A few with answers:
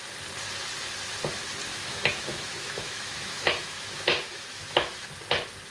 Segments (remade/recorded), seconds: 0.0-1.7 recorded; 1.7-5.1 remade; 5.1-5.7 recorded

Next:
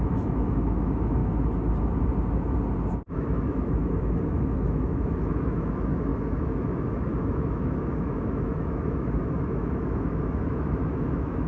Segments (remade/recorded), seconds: 0.0-1.2 remade; 1.2-3.1 recorded; 3.1-11.5 remade